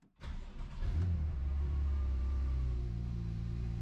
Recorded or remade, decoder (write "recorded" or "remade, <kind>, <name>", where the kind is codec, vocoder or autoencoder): remade, vocoder, BigVGAN v2